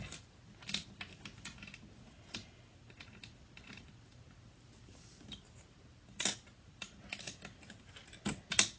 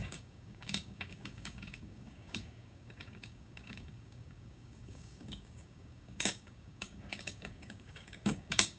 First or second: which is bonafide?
first